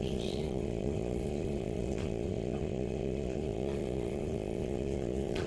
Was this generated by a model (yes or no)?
yes